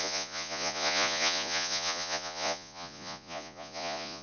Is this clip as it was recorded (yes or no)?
no